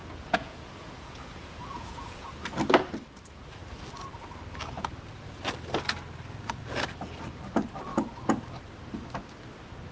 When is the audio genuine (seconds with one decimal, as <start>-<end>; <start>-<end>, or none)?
2.3-9.9